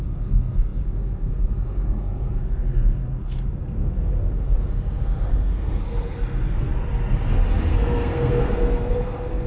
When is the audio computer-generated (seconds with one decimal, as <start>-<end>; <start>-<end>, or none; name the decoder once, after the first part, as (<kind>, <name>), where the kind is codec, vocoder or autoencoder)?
0.0-6.7 (codec, SNAC); 7.7-9.5